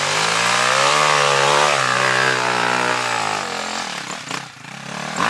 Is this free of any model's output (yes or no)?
yes